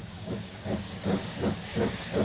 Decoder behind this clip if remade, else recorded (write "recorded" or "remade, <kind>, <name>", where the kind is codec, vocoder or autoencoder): remade, codec, DAC